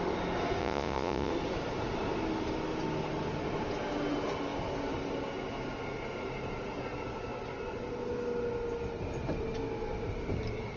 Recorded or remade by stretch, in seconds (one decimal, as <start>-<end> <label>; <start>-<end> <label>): 0.0-0.6 recorded; 0.6-1.3 remade; 1.3-10.8 recorded